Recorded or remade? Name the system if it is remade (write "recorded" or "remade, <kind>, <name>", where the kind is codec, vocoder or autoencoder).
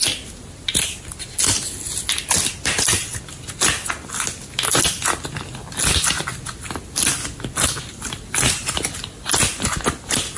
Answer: recorded